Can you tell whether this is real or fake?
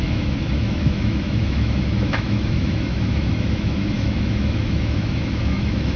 fake